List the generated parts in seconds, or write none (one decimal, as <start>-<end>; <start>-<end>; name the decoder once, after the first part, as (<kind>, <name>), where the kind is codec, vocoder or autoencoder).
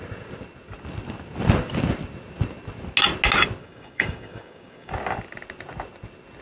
3.6-4.9 (codec, DAC)